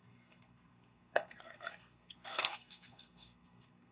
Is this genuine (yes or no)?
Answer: no